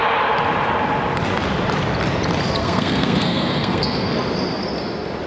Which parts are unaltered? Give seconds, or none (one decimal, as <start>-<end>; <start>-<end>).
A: 0.0-2.6; 4.1-5.3